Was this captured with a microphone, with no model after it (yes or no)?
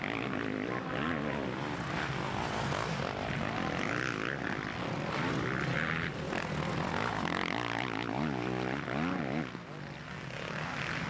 yes